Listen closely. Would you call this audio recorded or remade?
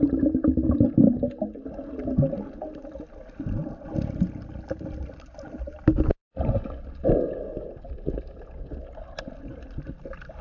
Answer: recorded